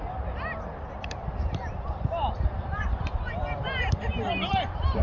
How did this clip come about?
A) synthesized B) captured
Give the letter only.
A